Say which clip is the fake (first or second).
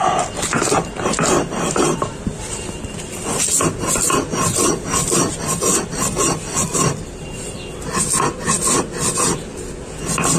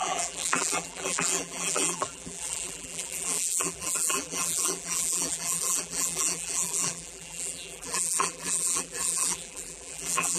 second